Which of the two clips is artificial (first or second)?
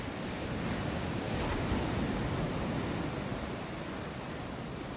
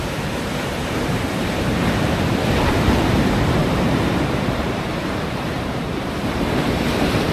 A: second